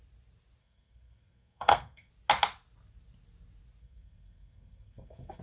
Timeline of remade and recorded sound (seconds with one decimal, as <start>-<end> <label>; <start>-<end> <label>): 0.0-0.6 recorded; 0.6-2.1 remade; 2.1-3.8 recorded; 3.8-5.4 remade